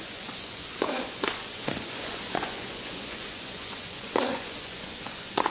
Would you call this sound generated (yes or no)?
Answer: yes